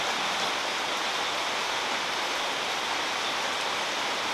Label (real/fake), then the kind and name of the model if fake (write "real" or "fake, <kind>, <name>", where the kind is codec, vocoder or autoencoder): real